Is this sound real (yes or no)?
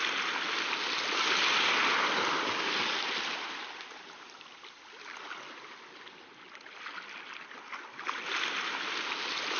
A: yes